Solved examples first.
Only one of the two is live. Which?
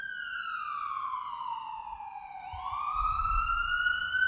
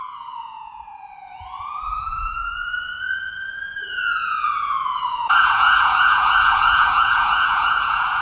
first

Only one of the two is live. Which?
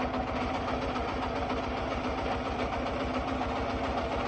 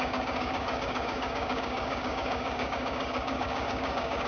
first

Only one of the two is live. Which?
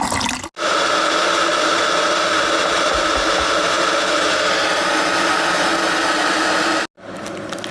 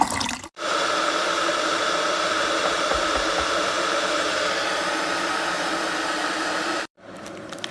first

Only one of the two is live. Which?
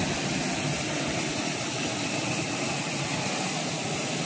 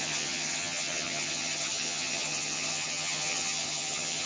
first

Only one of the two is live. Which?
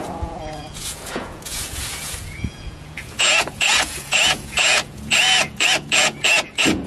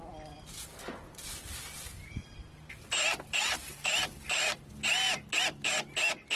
second